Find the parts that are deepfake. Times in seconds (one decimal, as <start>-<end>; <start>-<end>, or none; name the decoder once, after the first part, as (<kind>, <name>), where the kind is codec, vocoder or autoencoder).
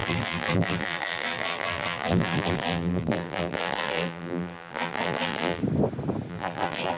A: 0.0-5.6 (vocoder, BigVGAN v2); 6.3-7.0